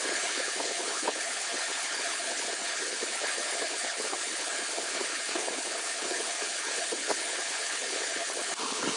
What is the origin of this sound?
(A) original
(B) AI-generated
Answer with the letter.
B